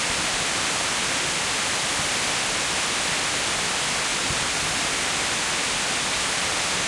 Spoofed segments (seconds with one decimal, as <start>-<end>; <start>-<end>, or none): 4.1-5.0